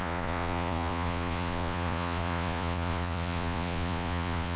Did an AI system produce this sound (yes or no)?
yes